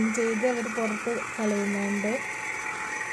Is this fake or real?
real